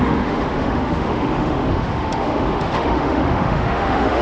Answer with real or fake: fake